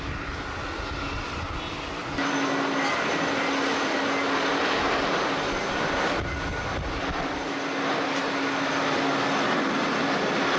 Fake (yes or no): no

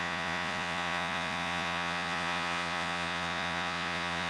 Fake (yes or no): yes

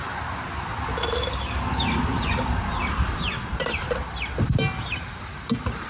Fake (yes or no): no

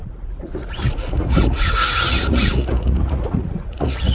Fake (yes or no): yes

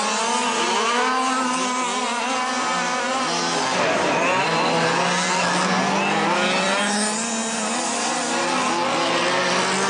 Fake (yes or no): no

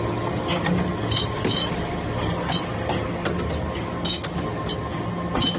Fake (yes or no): no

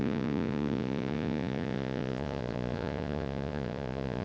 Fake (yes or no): yes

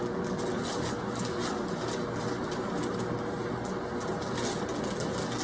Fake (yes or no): no